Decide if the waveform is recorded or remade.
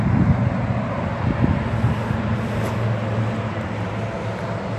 recorded